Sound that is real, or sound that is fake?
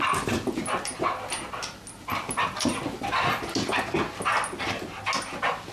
real